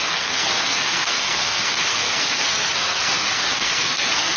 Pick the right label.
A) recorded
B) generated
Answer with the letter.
B